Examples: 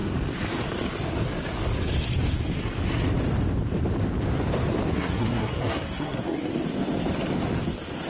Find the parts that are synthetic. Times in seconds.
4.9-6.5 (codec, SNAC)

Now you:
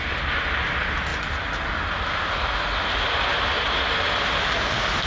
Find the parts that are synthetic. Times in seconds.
none

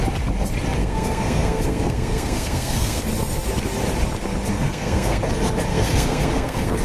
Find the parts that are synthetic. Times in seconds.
0.8-3.0 (codec, SNAC); 4.5-5.2; 5.7-6.8

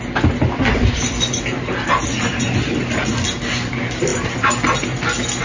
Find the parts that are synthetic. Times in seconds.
none